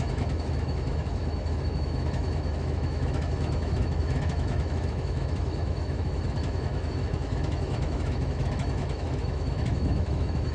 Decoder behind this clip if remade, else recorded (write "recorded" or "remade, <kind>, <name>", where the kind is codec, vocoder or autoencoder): remade, autoencoder, DAC-VAE